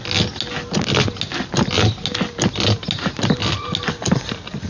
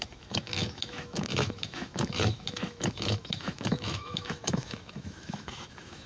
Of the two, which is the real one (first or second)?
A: first